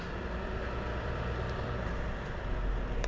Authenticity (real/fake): fake